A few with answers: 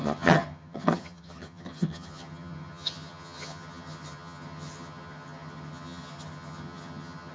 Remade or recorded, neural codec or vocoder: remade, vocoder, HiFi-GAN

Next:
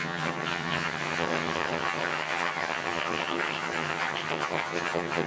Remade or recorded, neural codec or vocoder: remade, vocoder, HiFi-GAN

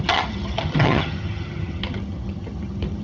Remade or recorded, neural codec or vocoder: remade, vocoder, HiFi-GAN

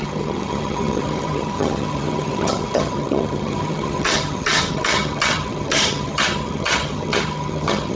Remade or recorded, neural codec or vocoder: remade, vocoder, HiFi-GAN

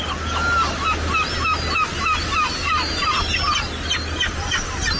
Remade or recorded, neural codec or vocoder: recorded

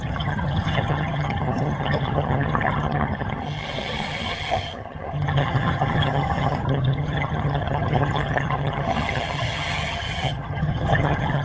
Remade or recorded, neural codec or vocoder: remade, vocoder, HiFi-GAN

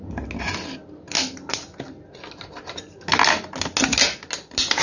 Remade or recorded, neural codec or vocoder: recorded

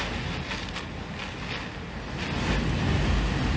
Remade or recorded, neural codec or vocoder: recorded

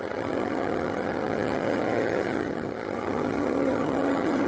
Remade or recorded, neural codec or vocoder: remade, vocoder, HiFi-GAN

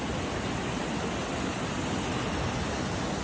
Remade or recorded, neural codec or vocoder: recorded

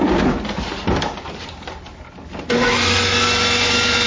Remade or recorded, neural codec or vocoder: recorded